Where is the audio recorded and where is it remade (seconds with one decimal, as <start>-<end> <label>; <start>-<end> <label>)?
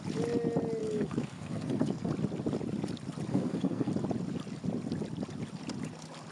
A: 0.0-0.8 recorded; 0.8-2.1 remade; 2.1-3.3 recorded; 3.3-3.9 remade; 3.9-6.3 recorded